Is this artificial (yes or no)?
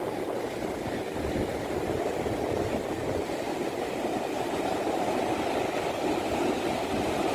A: no